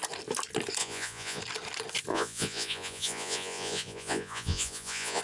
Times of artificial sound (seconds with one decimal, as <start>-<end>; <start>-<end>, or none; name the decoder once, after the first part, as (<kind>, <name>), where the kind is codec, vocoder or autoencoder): 0.8-1.4 (vocoder, Vocos); 2.1-5.2